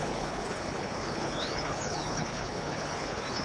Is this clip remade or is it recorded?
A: remade